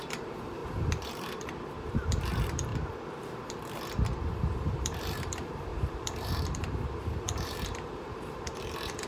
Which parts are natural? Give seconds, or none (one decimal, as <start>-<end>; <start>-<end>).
2.7-4.4